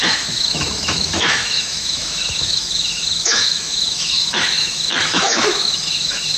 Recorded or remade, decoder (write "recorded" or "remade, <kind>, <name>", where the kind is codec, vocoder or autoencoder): remade, autoencoder, DAC-VAE